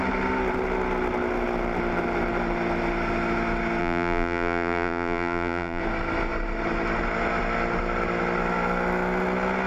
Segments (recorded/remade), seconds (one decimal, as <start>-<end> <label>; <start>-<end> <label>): 0.0-3.8 recorded; 3.8-5.8 remade; 5.8-9.7 recorded